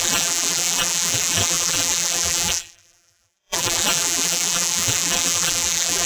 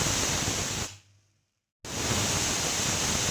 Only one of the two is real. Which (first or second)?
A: second